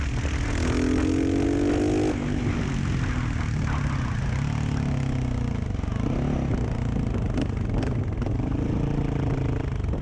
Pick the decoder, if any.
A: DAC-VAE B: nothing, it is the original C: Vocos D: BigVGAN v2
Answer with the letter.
B